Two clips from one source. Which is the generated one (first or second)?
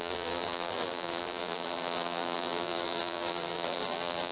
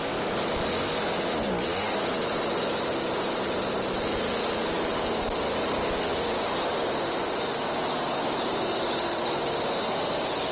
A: first